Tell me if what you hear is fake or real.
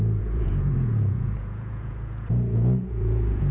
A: fake